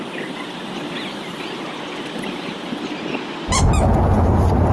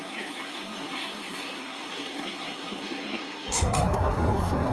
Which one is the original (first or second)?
first